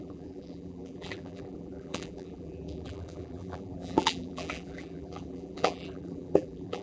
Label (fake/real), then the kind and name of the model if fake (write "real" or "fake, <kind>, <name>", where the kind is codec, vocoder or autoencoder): fake, vocoder, BigVGAN v2